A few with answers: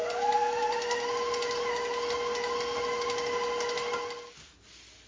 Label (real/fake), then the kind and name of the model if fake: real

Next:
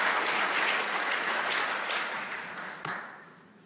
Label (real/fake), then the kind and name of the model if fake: fake, vocoder, Vocos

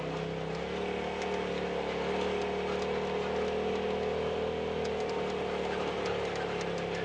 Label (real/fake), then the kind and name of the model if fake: real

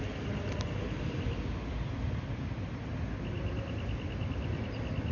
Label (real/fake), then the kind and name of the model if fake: real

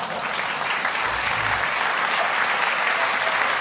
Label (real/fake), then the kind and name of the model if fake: real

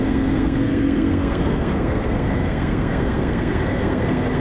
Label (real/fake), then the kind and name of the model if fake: fake, codec, SNAC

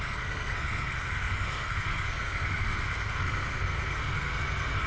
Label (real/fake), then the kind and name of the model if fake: fake, codec, SNAC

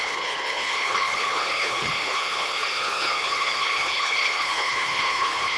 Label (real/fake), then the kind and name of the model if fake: fake, codec, HILCodec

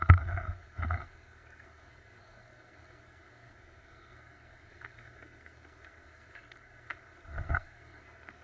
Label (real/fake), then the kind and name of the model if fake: fake, codec, SNAC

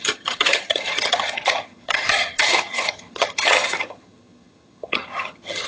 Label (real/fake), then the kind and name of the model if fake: fake, vocoder, HiFi-GAN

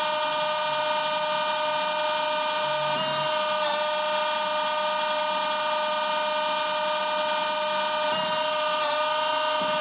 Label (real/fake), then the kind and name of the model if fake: real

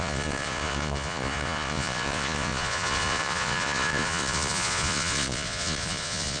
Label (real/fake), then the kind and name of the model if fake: fake, vocoder, Vocos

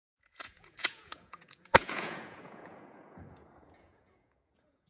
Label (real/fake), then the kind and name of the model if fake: fake, vocoder, Vocos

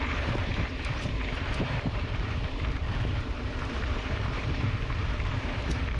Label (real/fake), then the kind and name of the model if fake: fake, vocoder, BigVGAN v2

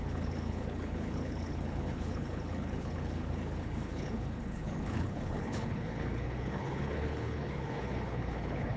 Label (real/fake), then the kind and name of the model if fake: fake, codec, HILCodec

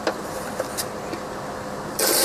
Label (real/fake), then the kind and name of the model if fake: fake, vocoder, BigVGAN v2